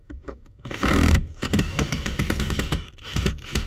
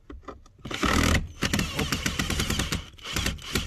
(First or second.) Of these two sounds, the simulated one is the first